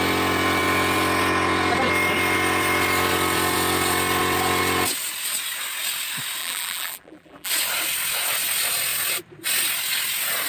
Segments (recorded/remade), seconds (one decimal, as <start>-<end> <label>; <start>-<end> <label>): 0.0-6.4 recorded; 6.4-7.5 remade; 7.5-10.5 recorded